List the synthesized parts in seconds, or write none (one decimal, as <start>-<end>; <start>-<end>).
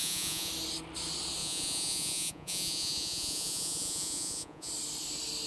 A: 0.0-0.5; 1.4-4.7